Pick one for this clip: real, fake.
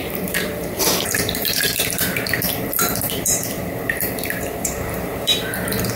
fake